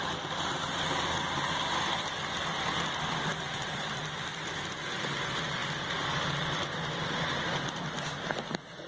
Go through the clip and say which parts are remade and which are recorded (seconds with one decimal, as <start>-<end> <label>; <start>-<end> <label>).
0.0-2.5 recorded; 2.5-4.7 remade; 4.7-8.9 recorded